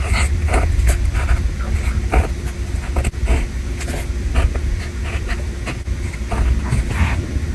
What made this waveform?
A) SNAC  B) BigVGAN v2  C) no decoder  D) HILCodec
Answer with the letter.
C